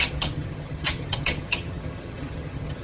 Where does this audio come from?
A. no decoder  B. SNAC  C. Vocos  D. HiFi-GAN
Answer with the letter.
D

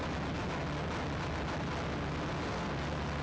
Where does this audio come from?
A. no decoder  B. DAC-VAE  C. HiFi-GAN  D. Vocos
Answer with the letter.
A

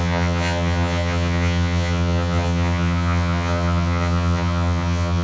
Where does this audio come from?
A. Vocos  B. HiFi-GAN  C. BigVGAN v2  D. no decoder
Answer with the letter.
B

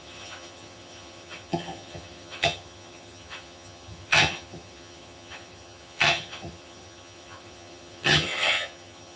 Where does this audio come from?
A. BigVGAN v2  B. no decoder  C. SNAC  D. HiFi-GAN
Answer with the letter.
D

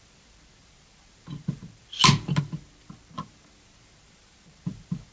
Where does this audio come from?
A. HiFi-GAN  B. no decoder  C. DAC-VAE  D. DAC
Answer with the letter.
B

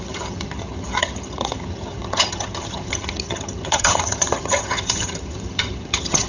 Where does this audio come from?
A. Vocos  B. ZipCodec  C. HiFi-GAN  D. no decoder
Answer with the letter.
C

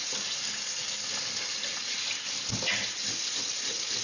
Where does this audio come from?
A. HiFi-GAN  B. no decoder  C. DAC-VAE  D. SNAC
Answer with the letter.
B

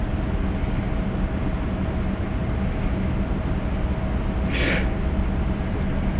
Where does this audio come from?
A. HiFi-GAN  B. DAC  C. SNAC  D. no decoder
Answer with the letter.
D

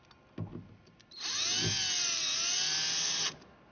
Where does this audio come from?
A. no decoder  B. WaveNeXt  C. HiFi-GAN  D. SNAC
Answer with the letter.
A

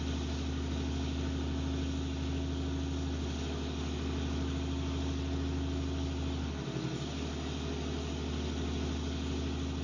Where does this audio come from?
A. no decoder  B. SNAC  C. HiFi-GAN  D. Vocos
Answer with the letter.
A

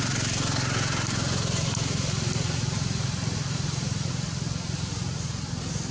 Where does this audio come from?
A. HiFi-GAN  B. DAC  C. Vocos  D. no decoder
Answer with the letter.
D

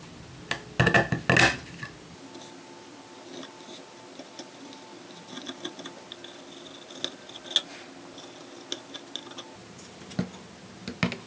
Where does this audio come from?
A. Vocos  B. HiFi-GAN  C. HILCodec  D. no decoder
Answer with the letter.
D